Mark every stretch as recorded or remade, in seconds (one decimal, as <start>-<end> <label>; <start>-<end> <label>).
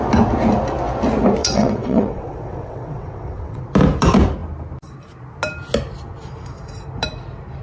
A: 0.0-1.4 recorded; 1.4-3.6 remade; 3.6-7.6 recorded